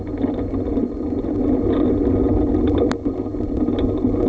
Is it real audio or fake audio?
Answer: real